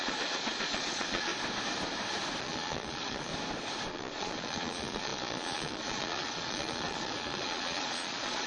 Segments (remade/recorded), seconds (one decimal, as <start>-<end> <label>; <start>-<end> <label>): 0.0-1.3 remade; 1.3-2.4 recorded; 2.4-3.3 remade; 3.3-3.9 recorded; 3.9-8.5 remade

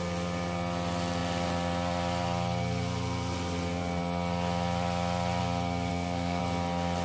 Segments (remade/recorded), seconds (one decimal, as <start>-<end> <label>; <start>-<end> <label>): 0.0-5.9 recorded; 5.9-6.4 remade; 6.4-7.0 recorded

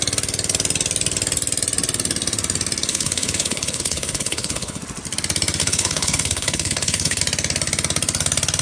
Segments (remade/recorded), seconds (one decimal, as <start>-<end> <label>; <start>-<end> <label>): 0.0-2.9 recorded; 2.9-4.8 remade; 4.8-5.6 recorded; 5.6-7.2 remade; 7.2-8.6 recorded